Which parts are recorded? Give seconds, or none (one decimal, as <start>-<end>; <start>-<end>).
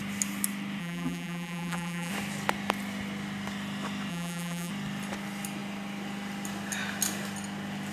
0.0-0.8; 2.1-4.1; 4.7-7.9